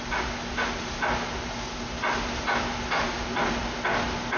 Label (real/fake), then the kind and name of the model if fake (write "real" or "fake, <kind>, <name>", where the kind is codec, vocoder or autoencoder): real